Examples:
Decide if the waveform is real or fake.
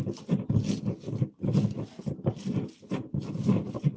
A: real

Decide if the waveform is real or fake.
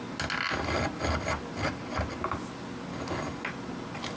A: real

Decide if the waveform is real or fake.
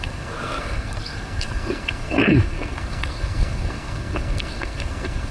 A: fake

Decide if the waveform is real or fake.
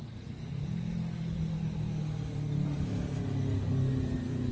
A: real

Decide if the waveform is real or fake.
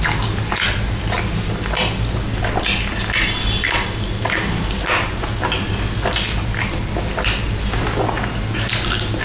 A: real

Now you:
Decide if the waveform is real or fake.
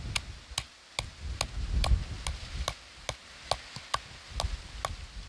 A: real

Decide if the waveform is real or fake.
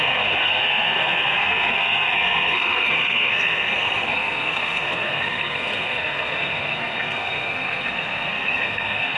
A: fake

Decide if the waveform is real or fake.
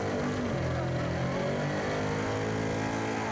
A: real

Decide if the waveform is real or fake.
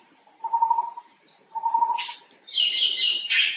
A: fake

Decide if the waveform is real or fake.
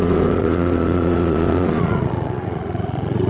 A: fake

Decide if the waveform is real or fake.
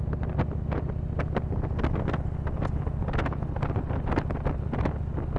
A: real